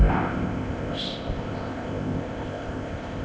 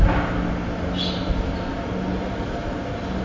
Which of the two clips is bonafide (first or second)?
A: second